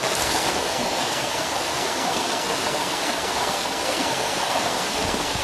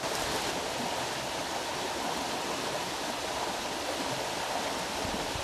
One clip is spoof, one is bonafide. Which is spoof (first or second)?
first